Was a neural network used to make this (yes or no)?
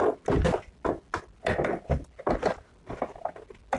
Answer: no